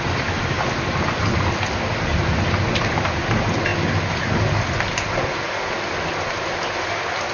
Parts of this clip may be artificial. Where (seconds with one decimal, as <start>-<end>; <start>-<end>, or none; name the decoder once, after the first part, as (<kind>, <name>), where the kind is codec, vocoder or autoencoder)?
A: none